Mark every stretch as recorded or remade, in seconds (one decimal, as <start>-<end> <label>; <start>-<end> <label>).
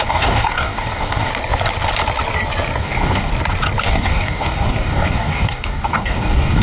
0.0-1.3 remade; 1.3-2.8 recorded; 2.8-3.3 remade; 3.3-3.8 recorded; 3.8-6.6 remade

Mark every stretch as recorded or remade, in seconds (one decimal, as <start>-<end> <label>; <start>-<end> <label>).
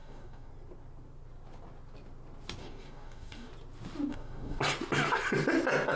0.0-0.5 remade; 0.5-2.6 recorded; 2.6-3.5 remade; 3.5-4.1 recorded; 4.1-4.6 remade; 4.6-6.0 recorded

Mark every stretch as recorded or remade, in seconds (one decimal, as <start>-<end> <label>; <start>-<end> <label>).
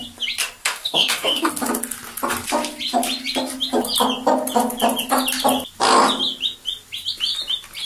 0.0-0.6 recorded; 0.6-1.5 remade; 1.5-7.8 recorded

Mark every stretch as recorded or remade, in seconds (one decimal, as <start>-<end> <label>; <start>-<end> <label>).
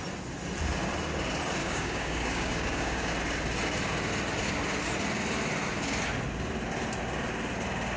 0.0-1.6 recorded; 1.6-3.1 remade; 3.1-8.0 recorded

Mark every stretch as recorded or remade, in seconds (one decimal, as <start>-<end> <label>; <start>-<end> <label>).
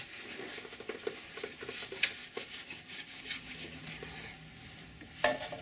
0.0-2.2 recorded; 2.2-3.8 remade; 3.8-5.6 recorded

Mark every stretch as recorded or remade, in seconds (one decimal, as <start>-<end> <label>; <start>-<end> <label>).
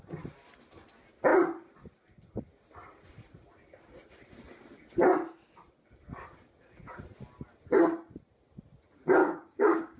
0.0-9.2 recorded; 9.2-10.0 remade